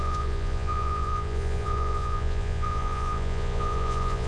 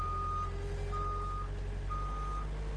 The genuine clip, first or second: second